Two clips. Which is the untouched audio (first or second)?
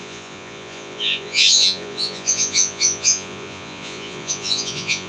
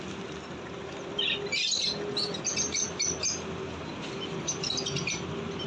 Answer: second